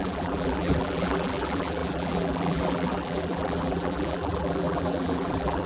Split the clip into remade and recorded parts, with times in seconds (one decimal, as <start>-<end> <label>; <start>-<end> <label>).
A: 0.0-5.7 remade